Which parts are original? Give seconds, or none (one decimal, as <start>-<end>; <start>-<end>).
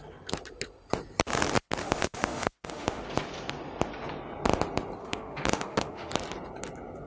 0.0-1.8; 3.0-5.0; 6.1-7.1